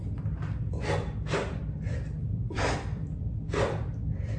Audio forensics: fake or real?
real